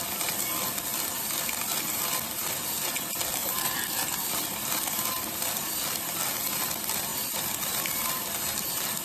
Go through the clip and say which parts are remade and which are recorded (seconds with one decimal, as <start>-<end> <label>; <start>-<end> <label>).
0.0-3.4 recorded; 3.4-4.4 remade; 4.4-7.1 recorded; 7.1-8.1 remade; 8.1-9.0 recorded